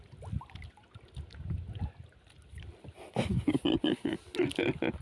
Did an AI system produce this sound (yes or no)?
no